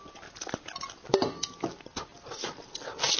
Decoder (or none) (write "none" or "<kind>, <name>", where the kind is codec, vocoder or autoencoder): none